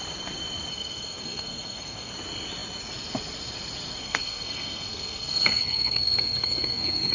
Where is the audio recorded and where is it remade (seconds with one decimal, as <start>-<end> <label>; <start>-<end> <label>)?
0.0-0.7 recorded; 0.7-2.1 remade; 2.1-4.0 recorded; 4.0-7.1 remade